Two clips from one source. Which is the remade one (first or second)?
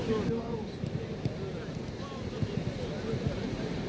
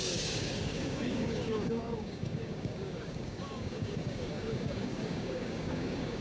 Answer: second